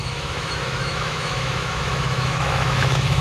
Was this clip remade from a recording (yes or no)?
yes